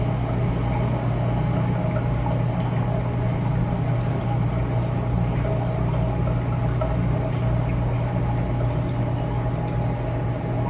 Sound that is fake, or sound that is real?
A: real